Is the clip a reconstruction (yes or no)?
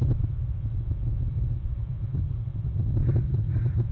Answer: no